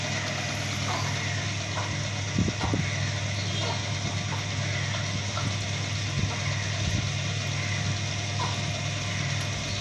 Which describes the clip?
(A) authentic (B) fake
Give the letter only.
A